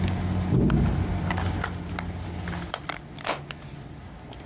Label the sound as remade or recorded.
recorded